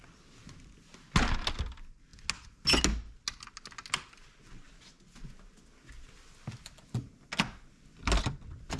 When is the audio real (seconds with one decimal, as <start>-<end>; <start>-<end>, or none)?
0.0-8.8